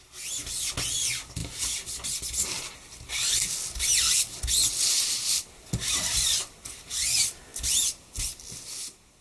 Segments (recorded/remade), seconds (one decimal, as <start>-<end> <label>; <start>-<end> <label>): 0.0-9.2 recorded